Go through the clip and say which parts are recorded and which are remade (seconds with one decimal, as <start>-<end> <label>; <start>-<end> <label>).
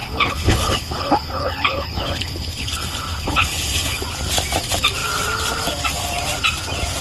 0.0-4.0 remade; 4.0-7.0 recorded